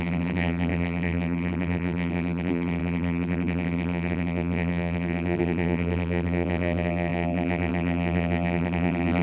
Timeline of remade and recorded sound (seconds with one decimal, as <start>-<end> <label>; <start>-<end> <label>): 0.0-9.2 remade